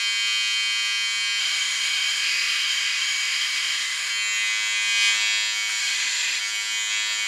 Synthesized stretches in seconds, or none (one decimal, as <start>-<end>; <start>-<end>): 1.4-4.1; 5.8-6.4